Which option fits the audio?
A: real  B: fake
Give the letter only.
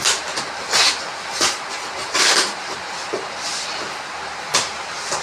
A